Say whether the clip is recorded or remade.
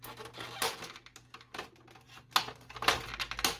recorded